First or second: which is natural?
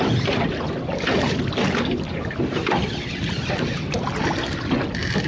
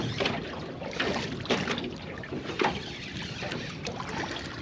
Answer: first